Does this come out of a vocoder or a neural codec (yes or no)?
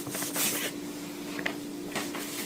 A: no